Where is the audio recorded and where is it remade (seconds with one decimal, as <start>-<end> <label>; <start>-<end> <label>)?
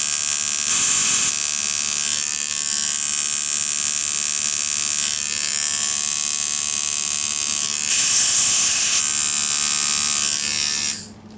0.0-0.7 recorded; 0.7-1.3 remade; 1.3-7.9 recorded; 7.9-9.0 remade; 9.0-11.4 recorded